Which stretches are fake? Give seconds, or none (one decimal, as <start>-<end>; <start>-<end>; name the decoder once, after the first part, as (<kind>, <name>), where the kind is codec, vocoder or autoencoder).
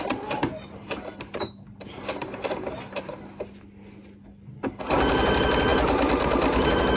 0.4-3.2 (vocoder, BigVGAN v2)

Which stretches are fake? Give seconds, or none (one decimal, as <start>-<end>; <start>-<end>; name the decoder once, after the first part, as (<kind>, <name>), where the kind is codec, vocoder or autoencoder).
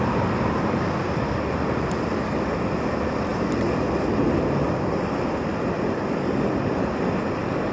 0.0-7.7 (vocoder, BigVGAN v2)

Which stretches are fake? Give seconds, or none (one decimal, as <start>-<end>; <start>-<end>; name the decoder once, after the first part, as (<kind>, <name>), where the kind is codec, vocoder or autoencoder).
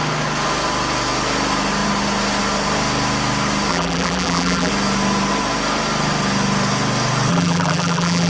3.7-4.7 (vocoder, BigVGAN v2); 7.3-8.3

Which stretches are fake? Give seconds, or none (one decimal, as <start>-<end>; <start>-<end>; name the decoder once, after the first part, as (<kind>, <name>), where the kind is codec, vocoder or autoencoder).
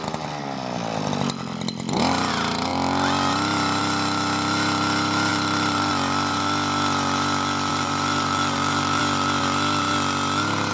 5.3-5.9 (vocoder, BigVGAN v2); 7.7-9.0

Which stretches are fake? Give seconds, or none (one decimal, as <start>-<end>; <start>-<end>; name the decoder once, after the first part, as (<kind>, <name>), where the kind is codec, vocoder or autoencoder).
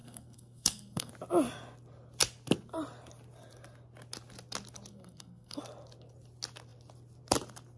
0.0-1.1 (codec, SNAC); 4.9-5.6